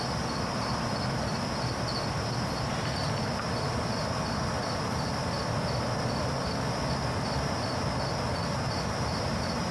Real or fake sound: real